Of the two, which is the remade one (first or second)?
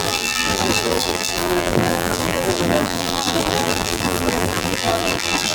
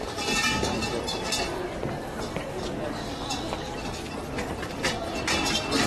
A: first